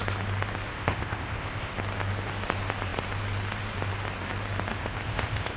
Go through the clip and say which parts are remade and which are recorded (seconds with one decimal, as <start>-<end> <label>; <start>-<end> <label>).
0.0-0.7 recorded; 0.7-1.7 remade; 1.7-4.7 recorded; 4.7-5.6 remade

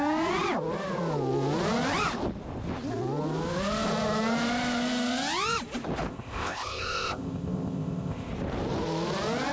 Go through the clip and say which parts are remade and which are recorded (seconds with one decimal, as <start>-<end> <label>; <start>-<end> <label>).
0.0-6.1 recorded; 6.1-8.3 remade; 8.3-9.5 recorded

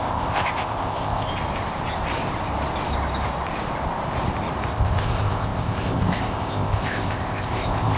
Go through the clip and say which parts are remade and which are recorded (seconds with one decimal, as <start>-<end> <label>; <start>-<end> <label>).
0.0-1.3 remade; 1.3-4.7 recorded; 4.7-8.0 remade

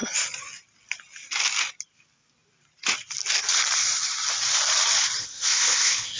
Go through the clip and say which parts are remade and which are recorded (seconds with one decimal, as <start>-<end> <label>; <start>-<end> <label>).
0.0-5.2 recorded; 5.2-6.2 remade

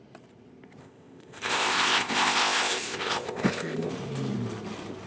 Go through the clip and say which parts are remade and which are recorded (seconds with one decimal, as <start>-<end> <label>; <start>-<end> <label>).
0.0-0.8 recorded; 0.8-3.9 remade; 3.9-5.1 recorded